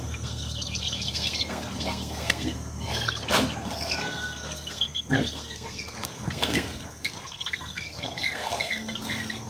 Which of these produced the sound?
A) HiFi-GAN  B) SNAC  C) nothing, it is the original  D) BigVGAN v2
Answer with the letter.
B